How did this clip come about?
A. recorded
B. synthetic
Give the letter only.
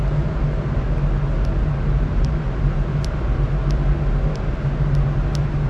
A